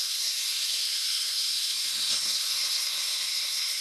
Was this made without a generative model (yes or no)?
no